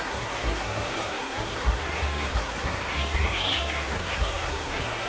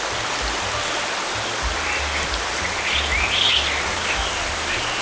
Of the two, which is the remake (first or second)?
first